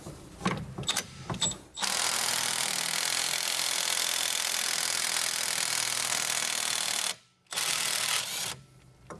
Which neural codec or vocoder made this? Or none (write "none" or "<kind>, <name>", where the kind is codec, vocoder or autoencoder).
none